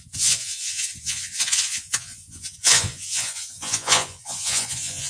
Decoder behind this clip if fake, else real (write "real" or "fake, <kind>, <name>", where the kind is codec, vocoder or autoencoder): fake, vocoder, Vocos